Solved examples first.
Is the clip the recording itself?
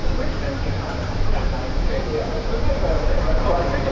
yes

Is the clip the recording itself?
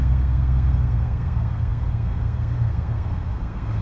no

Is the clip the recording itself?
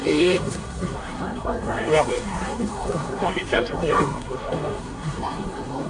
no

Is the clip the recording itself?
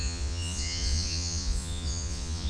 no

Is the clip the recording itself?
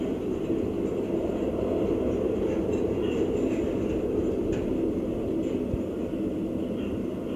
yes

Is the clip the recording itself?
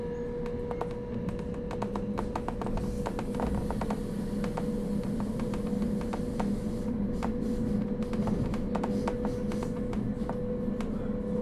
yes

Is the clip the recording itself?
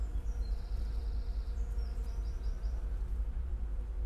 no